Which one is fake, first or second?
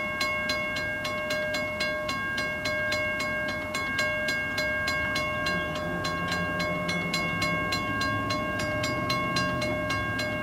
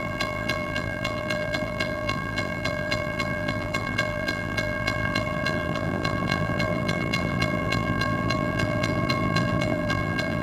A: second